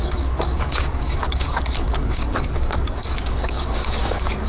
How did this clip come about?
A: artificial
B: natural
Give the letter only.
A